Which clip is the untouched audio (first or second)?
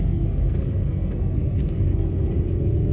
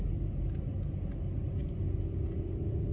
second